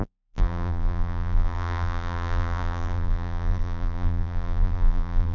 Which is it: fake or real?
fake